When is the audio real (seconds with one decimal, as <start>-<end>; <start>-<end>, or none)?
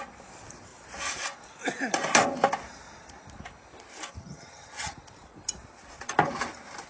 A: 0.0-4.2; 4.9-6.9